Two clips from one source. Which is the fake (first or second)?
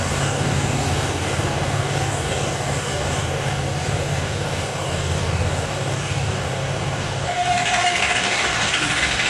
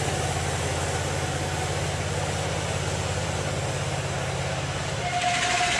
first